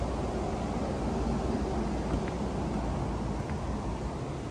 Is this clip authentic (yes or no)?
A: yes